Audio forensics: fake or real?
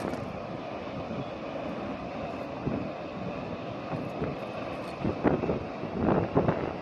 real